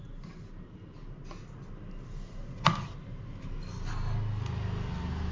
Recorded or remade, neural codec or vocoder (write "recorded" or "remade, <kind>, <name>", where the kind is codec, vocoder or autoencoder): recorded